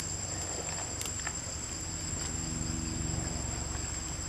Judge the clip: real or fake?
real